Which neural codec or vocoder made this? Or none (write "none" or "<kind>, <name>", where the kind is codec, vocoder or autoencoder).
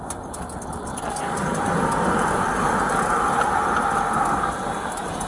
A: none